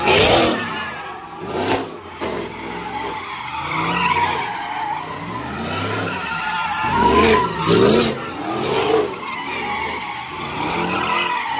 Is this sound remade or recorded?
recorded